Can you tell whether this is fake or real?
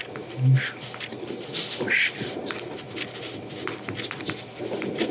real